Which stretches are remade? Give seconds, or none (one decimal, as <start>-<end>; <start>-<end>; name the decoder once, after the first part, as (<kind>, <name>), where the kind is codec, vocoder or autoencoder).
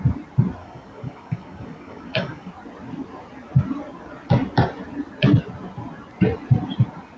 0.6-2.5 (codec, DAC)